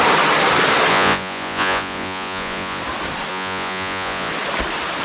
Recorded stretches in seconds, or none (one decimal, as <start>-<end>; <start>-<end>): 0.0-0.9; 2.8-3.3; 4.3-5.0